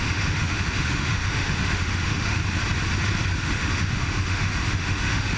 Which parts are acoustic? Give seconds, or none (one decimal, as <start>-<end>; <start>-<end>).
2.4-3.4